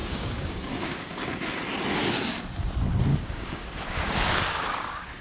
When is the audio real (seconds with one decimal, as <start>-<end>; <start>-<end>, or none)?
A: 1.2-3.1